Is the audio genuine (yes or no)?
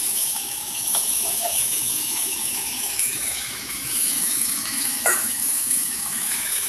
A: no